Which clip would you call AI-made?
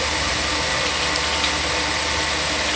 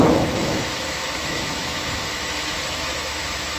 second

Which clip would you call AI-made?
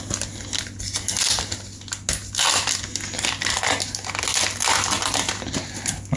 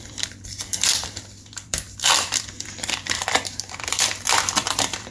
second